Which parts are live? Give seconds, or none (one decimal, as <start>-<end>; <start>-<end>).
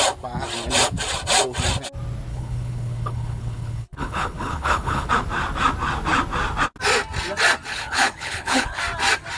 0.0-2.3; 5.1-7.7; 8.8-9.4